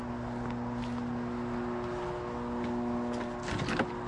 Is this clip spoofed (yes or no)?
no